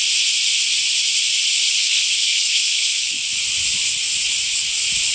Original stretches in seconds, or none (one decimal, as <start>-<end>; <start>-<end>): 0.0-1.7; 3.2-5.1